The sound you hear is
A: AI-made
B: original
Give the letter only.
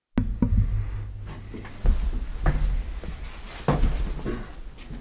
B